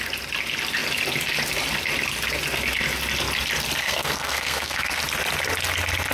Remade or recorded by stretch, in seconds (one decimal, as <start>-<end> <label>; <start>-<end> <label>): 0.0-3.8 recorded; 3.8-5.0 remade; 5.0-6.1 recorded